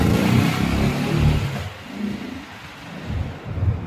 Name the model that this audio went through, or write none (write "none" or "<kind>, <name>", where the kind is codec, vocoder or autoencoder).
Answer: none